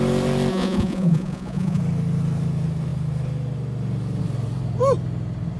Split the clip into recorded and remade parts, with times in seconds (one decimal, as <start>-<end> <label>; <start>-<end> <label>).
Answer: 0.0-0.5 recorded; 0.5-1.8 remade; 1.8-5.6 recorded